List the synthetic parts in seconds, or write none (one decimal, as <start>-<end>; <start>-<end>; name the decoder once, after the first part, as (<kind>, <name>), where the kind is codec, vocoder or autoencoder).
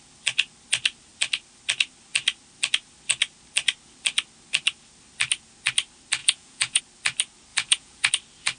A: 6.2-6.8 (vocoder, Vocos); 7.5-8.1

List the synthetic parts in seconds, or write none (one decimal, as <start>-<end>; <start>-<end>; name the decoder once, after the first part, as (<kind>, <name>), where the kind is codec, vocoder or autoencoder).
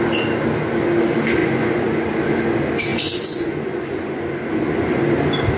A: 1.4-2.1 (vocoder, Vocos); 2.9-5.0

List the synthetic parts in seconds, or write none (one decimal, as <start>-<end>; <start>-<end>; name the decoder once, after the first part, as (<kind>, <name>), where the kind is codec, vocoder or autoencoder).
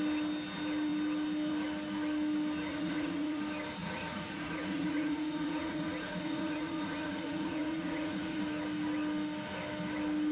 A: 2.7-3.4 (vocoder, Vocos); 3.8-8.4